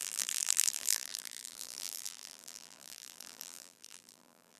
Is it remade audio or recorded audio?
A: remade